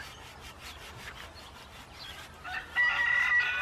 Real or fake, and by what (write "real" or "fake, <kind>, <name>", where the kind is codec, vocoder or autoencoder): real